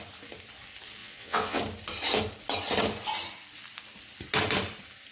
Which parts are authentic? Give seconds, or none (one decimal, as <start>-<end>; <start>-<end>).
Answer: 0.0-1.0; 1.6-5.1